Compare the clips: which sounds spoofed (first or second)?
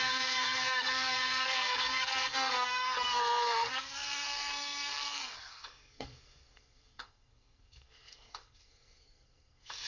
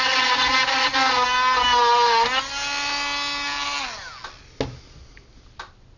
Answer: first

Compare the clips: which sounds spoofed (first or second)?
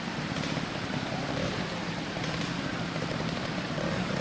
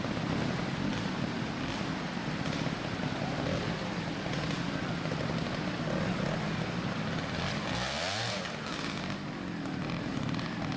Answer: first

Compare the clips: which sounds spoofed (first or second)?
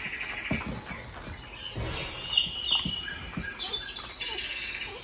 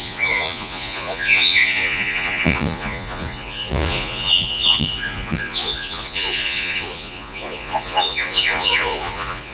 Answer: second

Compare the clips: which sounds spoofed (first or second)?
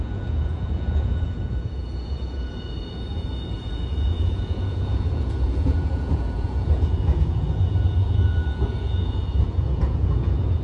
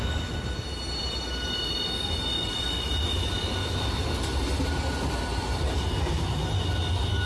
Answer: first